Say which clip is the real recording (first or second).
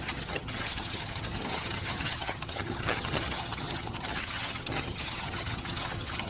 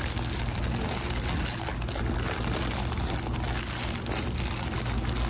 second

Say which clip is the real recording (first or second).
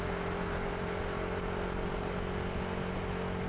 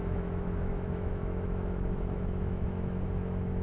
first